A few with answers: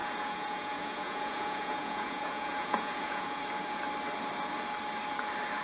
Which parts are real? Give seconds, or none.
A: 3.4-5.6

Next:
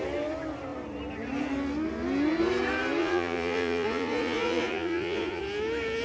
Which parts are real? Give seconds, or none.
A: 0.0-3.0; 5.4-6.0